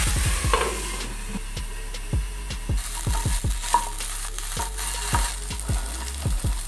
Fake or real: real